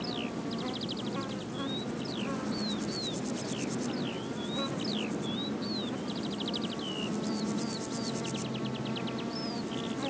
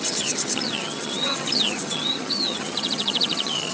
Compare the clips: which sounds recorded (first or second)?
first